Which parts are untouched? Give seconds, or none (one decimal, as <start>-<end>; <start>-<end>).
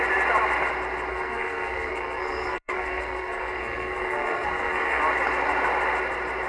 0.0-1.1; 5.0-6.5